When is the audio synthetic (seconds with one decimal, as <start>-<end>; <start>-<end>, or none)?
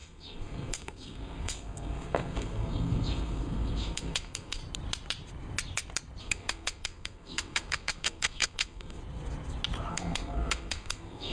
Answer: 0.0-4.6; 6.2-9.0; 9.9-11.3